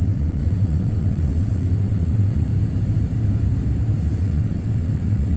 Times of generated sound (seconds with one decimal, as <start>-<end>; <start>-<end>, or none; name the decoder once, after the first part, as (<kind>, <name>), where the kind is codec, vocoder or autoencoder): 0.0-2.5 (vocoder, WaveNeXt); 4.0-5.4